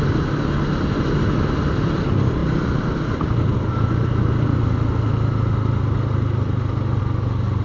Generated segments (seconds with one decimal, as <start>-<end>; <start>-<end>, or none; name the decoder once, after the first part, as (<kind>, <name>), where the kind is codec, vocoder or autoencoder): none